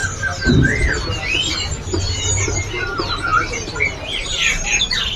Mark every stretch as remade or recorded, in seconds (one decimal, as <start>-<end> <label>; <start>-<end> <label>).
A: 0.0-5.2 recorded